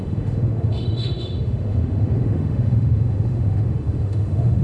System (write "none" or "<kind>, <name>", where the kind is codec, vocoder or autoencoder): autoencoder, DAC-VAE